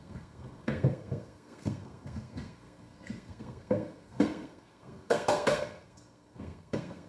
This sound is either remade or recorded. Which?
remade